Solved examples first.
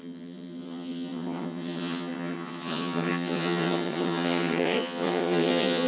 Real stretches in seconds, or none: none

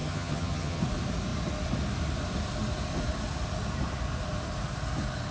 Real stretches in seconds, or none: 0.8-5.3